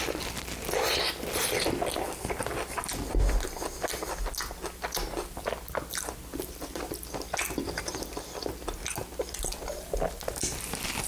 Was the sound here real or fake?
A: real